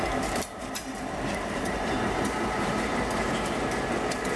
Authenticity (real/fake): fake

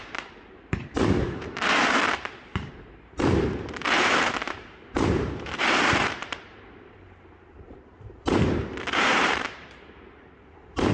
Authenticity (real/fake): fake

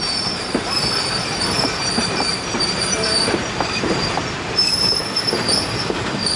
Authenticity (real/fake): fake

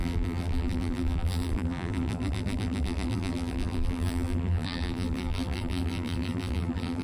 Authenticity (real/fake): fake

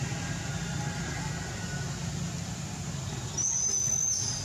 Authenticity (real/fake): real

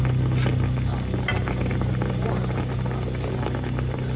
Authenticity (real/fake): real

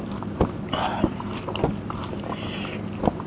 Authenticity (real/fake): fake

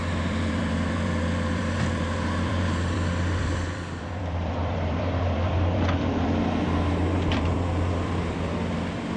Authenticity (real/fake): fake